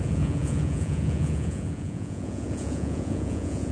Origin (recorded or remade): remade